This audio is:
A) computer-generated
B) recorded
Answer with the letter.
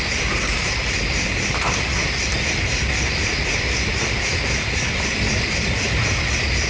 A